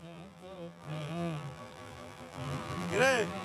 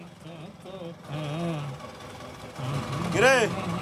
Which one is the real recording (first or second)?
second